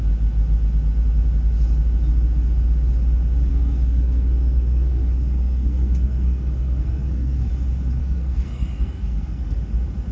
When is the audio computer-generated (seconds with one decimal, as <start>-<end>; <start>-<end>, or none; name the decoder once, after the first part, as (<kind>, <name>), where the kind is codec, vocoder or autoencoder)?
3.5-7.5 (codec, SNAC); 8.0-9.6

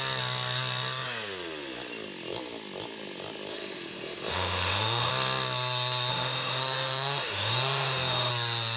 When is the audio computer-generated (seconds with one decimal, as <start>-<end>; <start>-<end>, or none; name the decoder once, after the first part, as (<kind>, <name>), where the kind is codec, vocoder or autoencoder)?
3.5-5.1 (autoencoder, DAC-VAE); 6.1-8.3

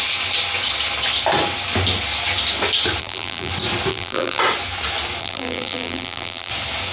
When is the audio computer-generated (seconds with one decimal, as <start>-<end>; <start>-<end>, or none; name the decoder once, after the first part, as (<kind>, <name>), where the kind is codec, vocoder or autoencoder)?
3.0-3.5 (vocoder, BigVGAN v2); 3.9-4.4; 5.2-6.5

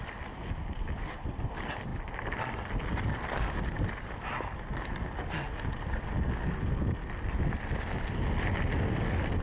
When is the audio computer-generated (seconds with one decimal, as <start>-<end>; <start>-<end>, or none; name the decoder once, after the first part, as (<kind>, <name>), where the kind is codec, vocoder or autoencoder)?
none